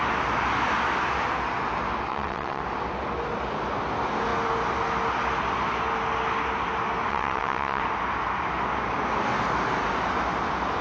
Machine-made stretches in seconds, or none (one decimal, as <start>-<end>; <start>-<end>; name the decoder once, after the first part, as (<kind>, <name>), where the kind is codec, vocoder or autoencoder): 2.1-2.6 (vocoder, WaveNeXt); 7.1-7.8